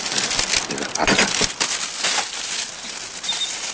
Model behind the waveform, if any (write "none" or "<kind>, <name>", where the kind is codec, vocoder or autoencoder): none